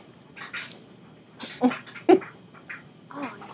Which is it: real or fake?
real